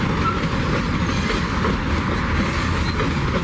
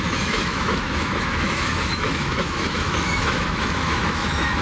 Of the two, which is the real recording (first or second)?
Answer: first